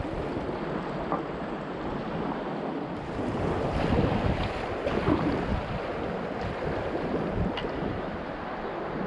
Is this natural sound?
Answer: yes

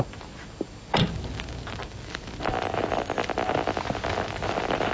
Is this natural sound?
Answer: yes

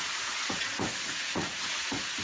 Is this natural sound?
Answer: no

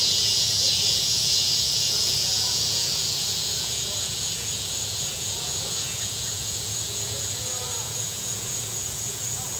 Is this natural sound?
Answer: no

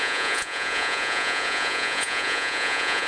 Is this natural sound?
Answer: no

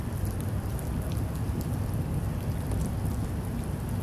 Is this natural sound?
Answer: yes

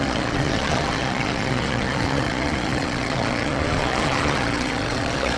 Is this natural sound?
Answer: no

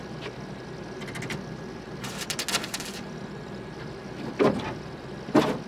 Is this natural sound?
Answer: yes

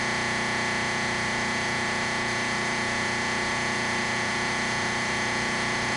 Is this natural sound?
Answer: yes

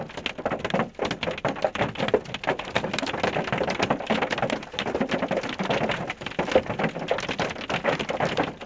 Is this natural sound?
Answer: yes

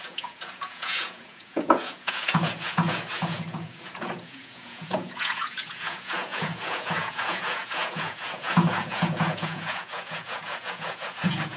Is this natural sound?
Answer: no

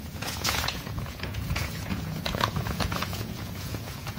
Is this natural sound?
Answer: no